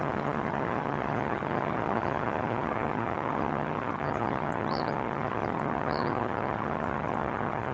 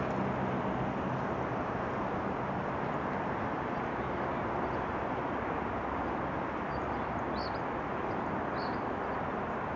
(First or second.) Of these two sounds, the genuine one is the second